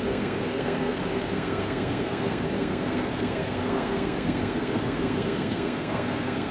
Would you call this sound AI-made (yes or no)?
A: yes